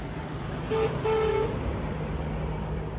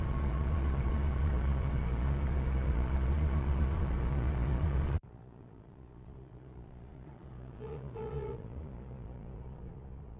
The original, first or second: first